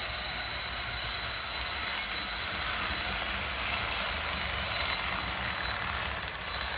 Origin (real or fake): real